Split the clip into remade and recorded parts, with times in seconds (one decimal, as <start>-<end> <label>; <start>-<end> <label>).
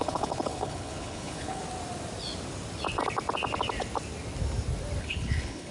0.0-1.6 remade; 1.6-5.0 recorded; 5.0-5.7 remade